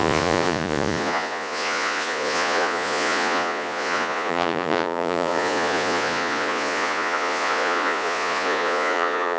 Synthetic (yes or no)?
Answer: yes